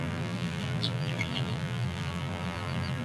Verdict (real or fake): fake